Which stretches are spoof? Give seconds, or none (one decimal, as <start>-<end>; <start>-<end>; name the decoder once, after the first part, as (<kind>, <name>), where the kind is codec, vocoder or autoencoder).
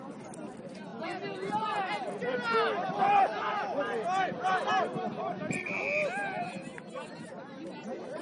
none